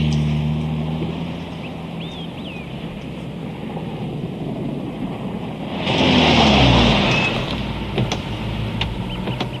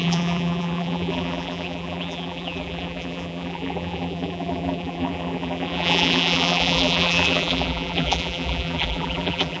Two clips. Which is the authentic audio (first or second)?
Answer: first